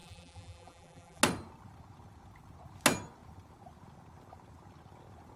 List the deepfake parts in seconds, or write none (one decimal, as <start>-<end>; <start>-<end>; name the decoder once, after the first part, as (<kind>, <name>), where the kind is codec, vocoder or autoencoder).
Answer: 0.0-1.2 (vocoder, BigVGAN v2)